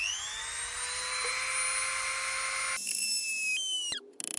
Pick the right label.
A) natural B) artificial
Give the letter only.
A